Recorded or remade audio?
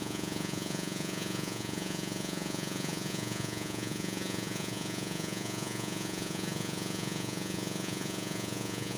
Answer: remade